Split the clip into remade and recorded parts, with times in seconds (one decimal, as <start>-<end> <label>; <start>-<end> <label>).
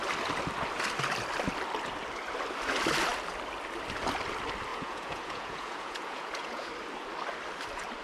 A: 0.0-4.7 recorded; 4.7-6.7 remade; 6.7-8.0 recorded